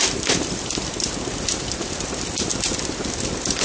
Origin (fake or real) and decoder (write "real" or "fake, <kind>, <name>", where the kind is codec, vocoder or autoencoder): real